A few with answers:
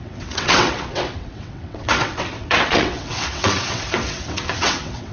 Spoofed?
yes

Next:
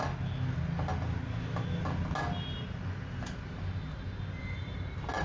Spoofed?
no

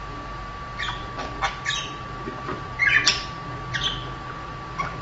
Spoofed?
no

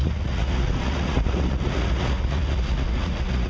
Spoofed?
yes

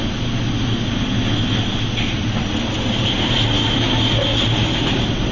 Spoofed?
no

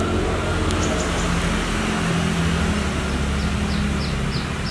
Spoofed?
no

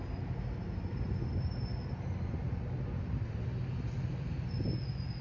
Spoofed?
no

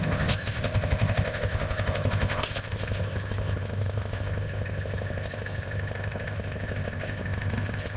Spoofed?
yes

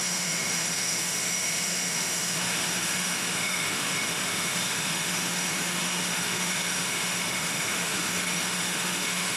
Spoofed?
yes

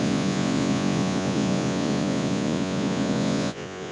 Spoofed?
yes